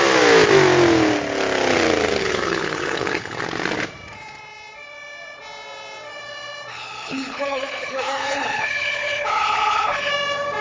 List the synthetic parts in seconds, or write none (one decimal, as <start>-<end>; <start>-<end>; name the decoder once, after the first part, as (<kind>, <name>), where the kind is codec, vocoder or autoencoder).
2.2-3.4 (codec, HILCodec); 6.7-10.1